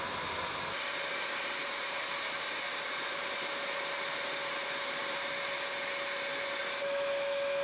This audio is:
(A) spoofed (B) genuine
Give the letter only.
B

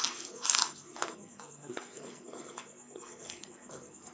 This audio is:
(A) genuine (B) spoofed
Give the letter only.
B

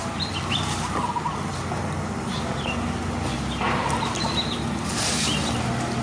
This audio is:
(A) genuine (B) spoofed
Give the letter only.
A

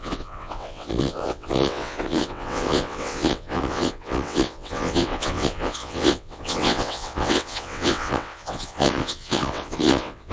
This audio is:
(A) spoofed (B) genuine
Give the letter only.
A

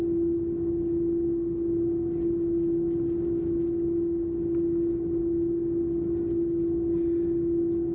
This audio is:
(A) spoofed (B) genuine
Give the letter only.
B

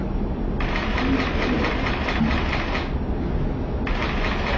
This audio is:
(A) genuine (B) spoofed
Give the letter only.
A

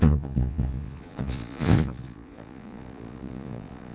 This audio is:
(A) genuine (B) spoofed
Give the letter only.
B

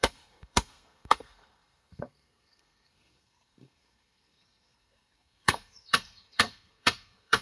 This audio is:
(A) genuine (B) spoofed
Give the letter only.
B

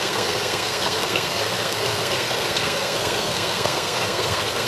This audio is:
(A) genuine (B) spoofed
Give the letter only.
B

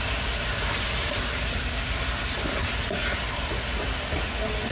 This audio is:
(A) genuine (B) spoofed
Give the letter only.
A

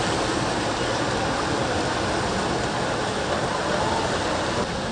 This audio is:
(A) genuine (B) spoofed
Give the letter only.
A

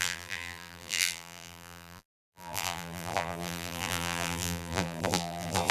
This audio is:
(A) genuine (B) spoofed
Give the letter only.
B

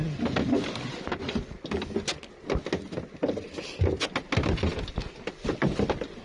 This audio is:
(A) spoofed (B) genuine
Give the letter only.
B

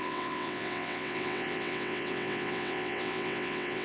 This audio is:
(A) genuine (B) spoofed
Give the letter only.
B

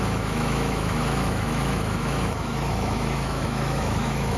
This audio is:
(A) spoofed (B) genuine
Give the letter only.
A